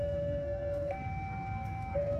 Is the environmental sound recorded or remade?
remade